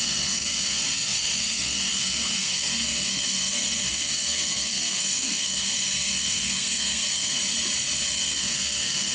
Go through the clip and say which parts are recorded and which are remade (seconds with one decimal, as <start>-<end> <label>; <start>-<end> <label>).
0.0-7.3 remade; 7.3-8.0 recorded; 8.0-9.1 remade